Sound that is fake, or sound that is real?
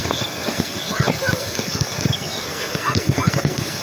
fake